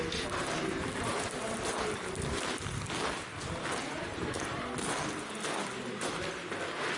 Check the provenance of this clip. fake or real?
real